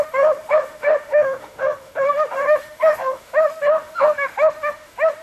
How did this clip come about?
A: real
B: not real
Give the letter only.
B